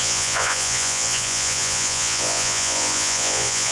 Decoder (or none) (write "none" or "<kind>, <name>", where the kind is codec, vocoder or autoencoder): vocoder, Vocos